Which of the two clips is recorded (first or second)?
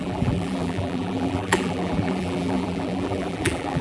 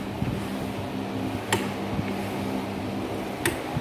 second